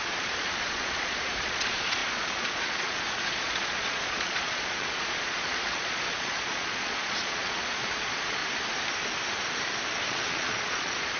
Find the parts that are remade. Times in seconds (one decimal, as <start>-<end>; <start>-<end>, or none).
0.0-8.4; 10.1-11.2